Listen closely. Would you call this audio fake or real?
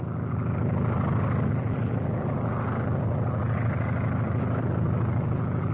real